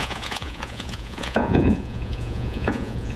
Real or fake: fake